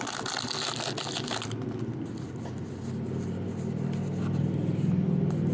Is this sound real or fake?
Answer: real